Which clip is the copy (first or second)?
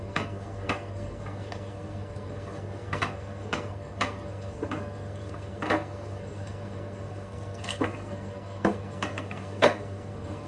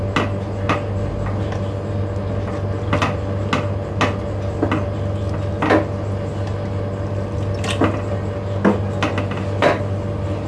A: first